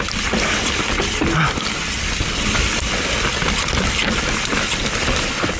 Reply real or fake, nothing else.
real